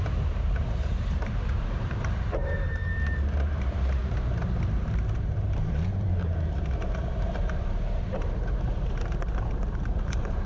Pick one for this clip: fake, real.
fake